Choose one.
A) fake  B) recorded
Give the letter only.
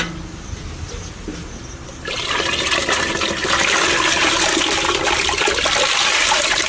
B